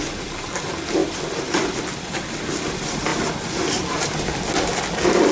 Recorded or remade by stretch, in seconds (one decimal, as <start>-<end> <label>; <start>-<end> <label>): 0.0-5.3 recorded